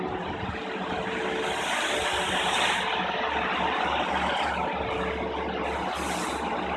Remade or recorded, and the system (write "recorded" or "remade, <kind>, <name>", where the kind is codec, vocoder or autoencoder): recorded